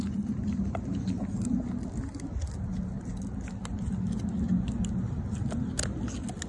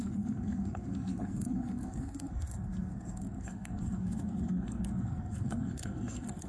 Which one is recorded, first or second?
first